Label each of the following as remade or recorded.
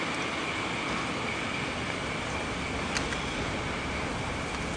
recorded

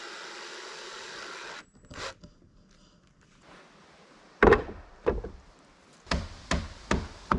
recorded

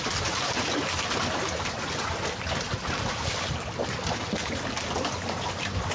recorded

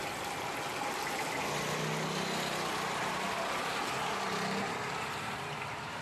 recorded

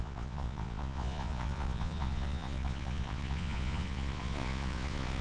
remade